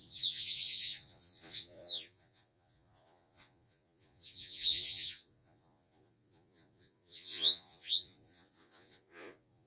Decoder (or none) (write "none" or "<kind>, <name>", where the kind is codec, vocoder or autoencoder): vocoder, Vocos